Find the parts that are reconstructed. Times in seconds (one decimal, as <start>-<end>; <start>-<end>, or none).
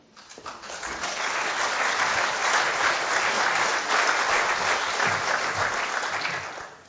none